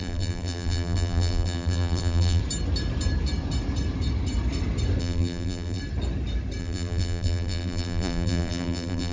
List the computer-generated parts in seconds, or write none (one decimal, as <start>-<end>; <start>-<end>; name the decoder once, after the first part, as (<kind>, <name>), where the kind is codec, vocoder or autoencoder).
0.0-2.4 (vocoder, BigVGAN v2); 5.0-5.8; 6.6-9.1